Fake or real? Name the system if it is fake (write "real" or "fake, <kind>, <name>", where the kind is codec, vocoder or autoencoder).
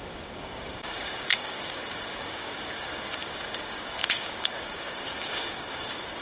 fake, codec, DAC